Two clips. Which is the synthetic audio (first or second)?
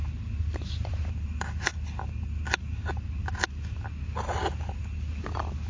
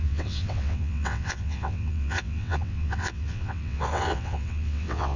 second